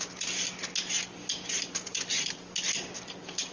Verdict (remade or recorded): recorded